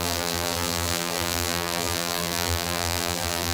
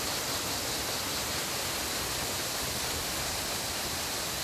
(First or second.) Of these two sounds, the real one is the second